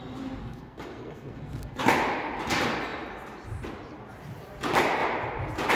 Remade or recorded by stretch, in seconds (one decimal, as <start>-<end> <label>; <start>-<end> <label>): 0.0-0.4 recorded; 0.4-1.9 remade; 1.9-5.7 recorded